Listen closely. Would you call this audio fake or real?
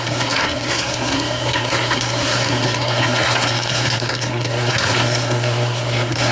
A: fake